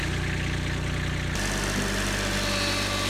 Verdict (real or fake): real